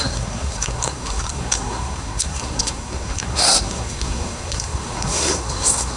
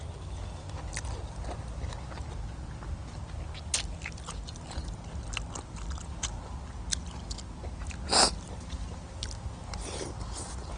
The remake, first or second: first